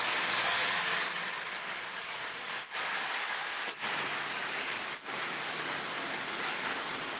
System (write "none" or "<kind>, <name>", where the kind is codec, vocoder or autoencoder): codec, DAC